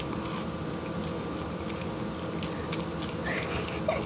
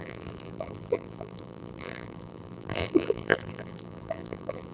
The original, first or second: first